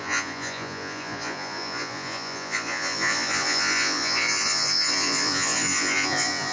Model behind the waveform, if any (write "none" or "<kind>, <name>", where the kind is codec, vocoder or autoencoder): vocoder, Vocos